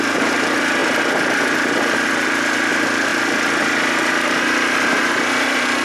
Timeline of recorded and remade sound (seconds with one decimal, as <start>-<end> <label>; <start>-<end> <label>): 0.0-5.8 recorded